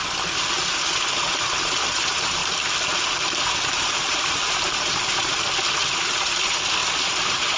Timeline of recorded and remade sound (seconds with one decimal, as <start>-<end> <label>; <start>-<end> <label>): 0.0-2.4 recorded; 2.4-5.3 remade; 5.3-6.8 recorded; 6.8-7.6 remade